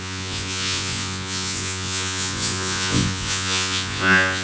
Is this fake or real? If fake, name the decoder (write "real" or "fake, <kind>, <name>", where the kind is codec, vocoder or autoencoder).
fake, vocoder, Vocos